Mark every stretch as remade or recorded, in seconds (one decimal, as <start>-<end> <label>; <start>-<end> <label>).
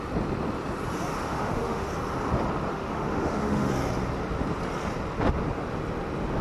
0.0-1.3 recorded; 1.3-1.9 remade; 1.9-2.7 recorded; 2.7-3.7 remade; 3.7-6.4 recorded